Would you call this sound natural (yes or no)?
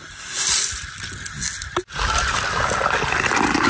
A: yes